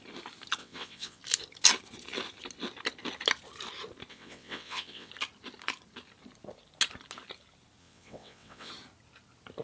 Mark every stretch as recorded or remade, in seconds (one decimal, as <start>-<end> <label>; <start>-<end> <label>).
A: 0.0-0.6 recorded; 0.6-1.2 remade; 1.2-4.1 recorded; 4.1-5.1 remade; 5.1-7.8 recorded; 7.8-8.7 remade; 8.7-9.6 recorded